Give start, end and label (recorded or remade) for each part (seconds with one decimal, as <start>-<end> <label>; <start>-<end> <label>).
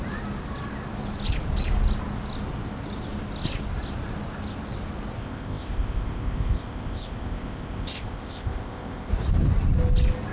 0.0-5.2 recorded; 5.2-9.1 remade; 9.1-10.3 recorded